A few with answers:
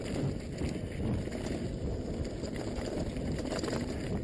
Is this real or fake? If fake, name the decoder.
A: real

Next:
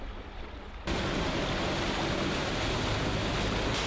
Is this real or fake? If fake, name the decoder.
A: real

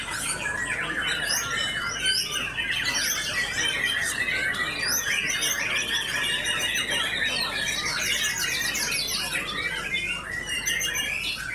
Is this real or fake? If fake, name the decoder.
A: real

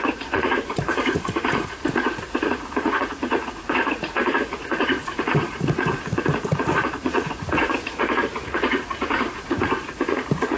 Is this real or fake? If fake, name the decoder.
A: fake, vocoder, Vocos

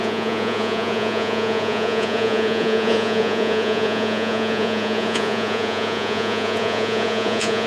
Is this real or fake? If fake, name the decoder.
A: fake, vocoder, Vocos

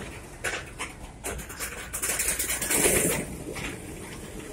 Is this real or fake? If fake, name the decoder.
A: real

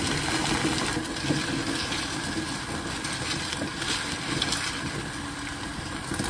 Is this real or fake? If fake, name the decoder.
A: real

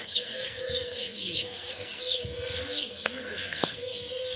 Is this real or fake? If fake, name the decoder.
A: fake, codec, SNAC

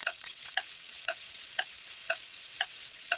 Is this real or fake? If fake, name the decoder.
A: fake, vocoder, WaveNeXt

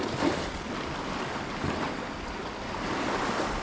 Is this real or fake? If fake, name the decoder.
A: real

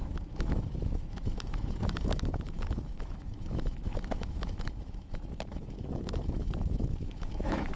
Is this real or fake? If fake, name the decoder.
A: fake, autoencoder, DAC-VAE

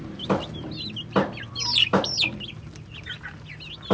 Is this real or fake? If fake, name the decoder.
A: real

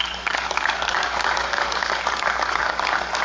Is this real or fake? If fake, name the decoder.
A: fake, codec, DAC